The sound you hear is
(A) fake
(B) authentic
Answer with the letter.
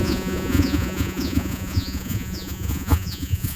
A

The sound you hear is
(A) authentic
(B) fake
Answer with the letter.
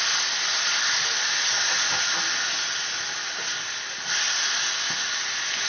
A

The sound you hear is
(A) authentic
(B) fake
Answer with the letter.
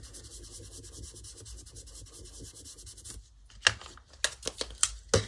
A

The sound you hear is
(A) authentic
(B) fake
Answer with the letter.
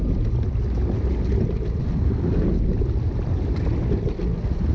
A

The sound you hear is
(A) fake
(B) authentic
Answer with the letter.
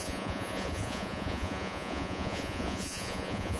A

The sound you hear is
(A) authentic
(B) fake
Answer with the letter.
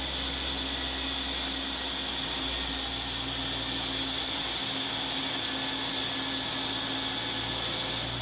A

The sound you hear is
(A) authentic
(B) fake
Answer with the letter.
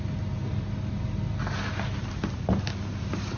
A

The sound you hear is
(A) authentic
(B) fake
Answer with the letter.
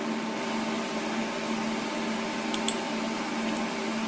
A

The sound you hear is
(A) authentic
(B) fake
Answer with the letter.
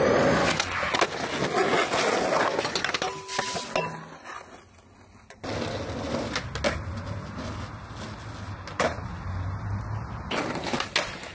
A